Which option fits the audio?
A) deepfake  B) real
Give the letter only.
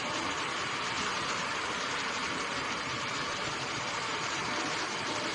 A